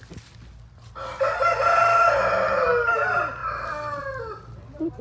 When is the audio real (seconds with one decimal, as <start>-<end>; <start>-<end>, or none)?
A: 0.0-5.0